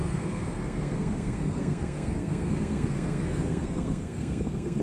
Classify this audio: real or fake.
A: fake